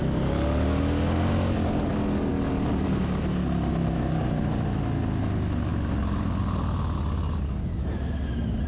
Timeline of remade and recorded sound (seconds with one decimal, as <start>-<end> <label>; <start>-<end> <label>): 0.0-8.7 recorded